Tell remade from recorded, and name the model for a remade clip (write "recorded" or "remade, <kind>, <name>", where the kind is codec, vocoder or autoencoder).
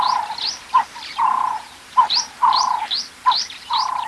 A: remade, vocoder, BigVGAN v2